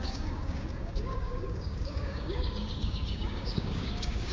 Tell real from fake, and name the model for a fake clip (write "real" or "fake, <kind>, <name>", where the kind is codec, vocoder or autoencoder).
fake, codec, DAC